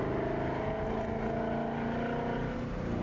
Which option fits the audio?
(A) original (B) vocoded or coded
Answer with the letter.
A